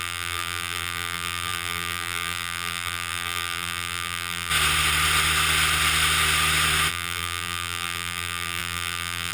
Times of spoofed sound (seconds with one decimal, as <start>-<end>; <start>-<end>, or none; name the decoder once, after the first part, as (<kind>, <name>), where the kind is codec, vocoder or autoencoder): 0.0-4.5 (vocoder, BigVGAN v2); 6.9-9.3